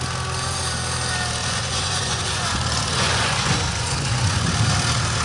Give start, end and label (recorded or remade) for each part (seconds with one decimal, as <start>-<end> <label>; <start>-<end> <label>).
0.0-1.4 recorded; 1.4-4.5 remade; 4.5-5.2 recorded